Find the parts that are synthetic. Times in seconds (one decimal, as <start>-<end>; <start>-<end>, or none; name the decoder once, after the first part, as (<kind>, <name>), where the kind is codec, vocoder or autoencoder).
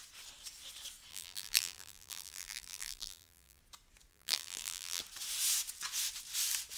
1.1-3.6 (vocoder, BigVGAN v2); 4.1-5.0